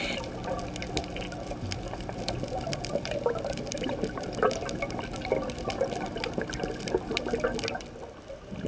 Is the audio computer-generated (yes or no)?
no